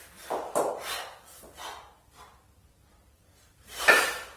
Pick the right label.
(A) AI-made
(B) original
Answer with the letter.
B